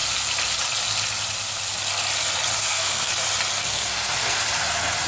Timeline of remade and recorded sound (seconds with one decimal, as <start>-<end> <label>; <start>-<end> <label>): 0.0-2.6 recorded; 2.6-3.1 remade; 3.1-3.5 recorded; 3.5-4.4 remade; 4.4-5.1 recorded